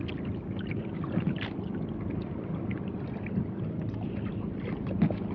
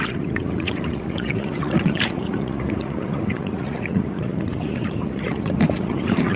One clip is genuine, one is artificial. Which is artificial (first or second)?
second